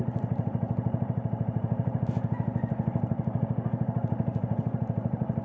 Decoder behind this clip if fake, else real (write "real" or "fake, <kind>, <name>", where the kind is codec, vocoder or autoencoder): fake, vocoder, BigVGAN v2